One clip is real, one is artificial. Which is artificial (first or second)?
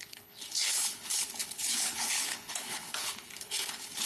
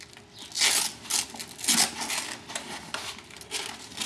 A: first